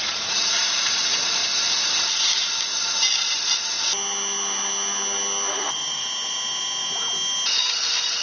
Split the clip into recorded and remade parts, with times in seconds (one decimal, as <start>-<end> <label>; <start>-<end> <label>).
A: 0.0-1.4 remade; 1.4-5.5 recorded; 5.5-6.0 remade; 6.0-8.2 recorded